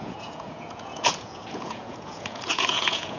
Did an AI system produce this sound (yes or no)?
yes